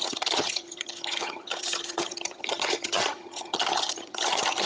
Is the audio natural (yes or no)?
no